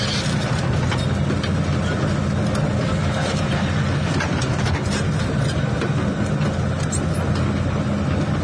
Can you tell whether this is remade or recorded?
recorded